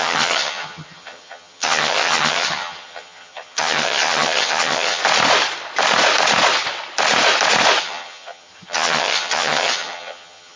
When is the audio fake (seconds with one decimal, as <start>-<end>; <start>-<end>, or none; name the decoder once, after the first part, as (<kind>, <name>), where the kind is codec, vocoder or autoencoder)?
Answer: 0.0-5.0 (vocoder, HiFi-GAN); 7.8-10.6